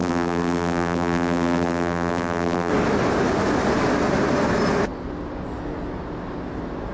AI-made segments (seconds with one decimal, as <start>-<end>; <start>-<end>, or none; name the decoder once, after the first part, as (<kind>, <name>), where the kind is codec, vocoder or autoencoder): 0.0-2.7 (vocoder, BigVGAN v2)